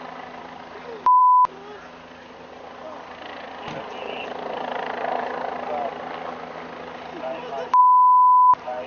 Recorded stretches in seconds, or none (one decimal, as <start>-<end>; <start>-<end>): 0.0-8.9